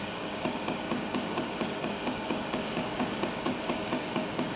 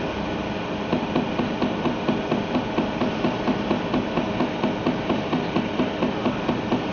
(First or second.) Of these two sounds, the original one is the second